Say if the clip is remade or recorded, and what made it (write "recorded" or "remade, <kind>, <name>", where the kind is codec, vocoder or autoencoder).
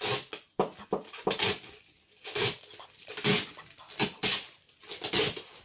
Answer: recorded